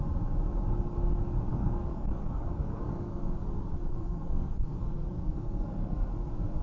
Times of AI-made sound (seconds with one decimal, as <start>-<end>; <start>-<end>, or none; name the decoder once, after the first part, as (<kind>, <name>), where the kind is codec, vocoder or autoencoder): 1.5-3.3 (codec, SNAC); 3.9-6.1